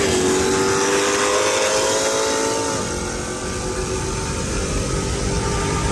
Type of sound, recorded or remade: recorded